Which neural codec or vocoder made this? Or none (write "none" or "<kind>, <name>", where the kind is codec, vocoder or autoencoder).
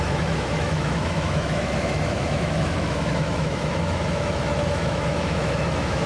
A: autoencoder, DAC-VAE